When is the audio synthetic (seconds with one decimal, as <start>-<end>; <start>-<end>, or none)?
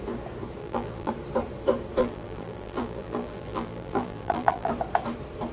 0.6-1.1; 2.0-4.7